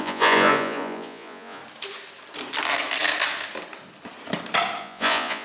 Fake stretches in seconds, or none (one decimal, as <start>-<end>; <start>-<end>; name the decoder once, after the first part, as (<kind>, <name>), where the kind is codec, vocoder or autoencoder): 0.0-1.6 (vocoder, Vocos); 4.8-5.4